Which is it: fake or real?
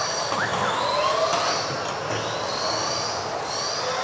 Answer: real